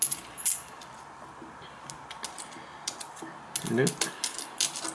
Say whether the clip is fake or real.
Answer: real